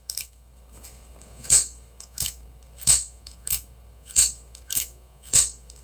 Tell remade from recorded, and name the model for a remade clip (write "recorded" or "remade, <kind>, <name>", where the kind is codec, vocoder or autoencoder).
remade, codec, SNAC